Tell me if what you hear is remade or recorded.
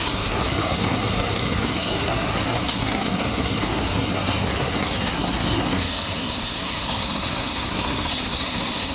remade